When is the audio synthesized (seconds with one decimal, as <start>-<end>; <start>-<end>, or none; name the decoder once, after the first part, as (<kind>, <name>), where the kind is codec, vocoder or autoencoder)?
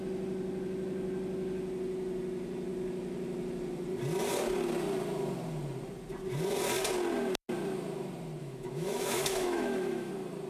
8.4-10.1 (autoencoder, DAC-VAE)